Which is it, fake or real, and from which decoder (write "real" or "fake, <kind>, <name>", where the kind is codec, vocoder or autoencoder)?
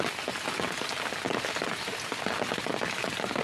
real